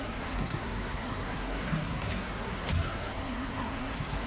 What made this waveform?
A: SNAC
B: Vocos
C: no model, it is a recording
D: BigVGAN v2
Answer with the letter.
A